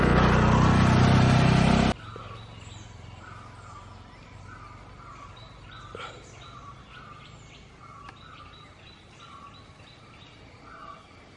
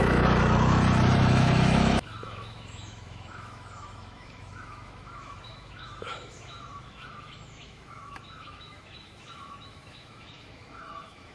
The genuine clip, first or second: first